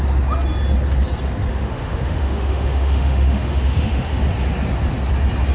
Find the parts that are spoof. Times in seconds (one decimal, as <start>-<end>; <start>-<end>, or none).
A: 1.5-4.2